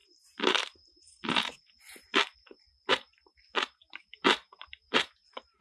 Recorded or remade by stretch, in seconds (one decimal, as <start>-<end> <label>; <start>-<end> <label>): 0.0-2.1 remade; 2.1-2.9 recorded; 2.9-5.6 remade